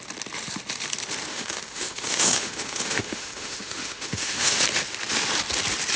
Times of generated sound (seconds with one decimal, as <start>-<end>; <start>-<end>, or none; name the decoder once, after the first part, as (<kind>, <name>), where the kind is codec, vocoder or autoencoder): 1.3-4.6 (autoencoder, DAC-VAE)